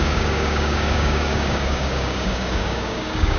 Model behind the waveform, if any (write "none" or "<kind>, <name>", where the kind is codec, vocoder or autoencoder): codec, DAC